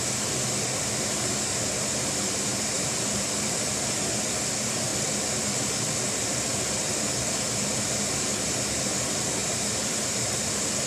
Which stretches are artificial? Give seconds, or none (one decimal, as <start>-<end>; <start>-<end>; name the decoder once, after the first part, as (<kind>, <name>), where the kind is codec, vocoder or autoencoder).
2.5-3.9 (vocoder, BigVGAN v2); 9.4-10.5